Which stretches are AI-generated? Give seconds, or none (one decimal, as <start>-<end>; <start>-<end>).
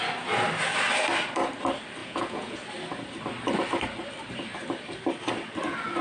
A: 2.0-2.6